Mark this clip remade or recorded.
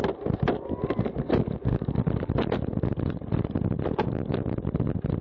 recorded